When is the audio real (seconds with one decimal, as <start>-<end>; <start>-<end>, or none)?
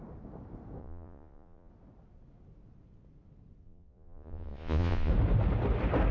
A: 0.0-0.8; 1.7-3.6; 5.1-6.1